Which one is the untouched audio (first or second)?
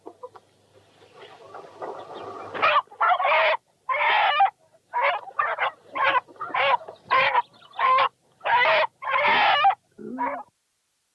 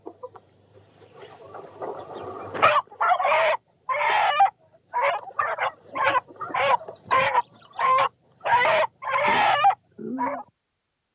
first